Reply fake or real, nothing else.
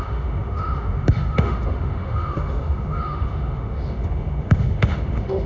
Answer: fake